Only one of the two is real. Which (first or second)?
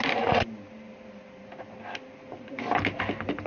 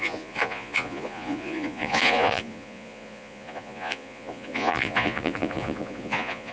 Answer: first